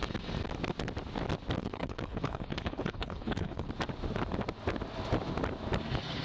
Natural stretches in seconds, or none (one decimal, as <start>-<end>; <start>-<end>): 0.0-1.6; 3.7-6.2